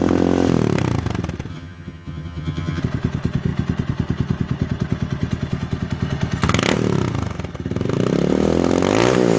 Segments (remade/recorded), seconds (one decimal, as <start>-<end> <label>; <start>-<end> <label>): 0.0-1.5 recorded; 1.5-2.8 remade; 2.8-9.4 recorded